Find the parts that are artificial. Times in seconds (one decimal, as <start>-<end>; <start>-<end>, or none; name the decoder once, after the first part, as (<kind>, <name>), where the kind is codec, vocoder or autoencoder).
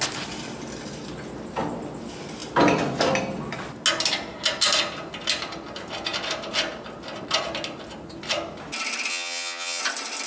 9.1-9.8 (vocoder, HiFi-GAN)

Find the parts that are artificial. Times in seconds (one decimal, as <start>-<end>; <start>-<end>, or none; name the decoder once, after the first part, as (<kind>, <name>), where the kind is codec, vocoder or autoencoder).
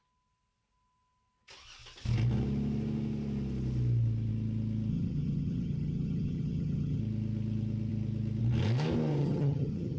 4.9-7.0 (vocoder, HiFi-GAN); 9.2-10.0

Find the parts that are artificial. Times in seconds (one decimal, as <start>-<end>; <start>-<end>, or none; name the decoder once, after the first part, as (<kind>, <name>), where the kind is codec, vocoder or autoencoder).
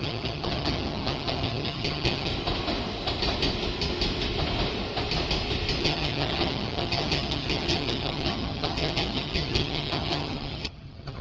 0.0-2.3 (vocoder, HiFi-GAN); 5.8-11.2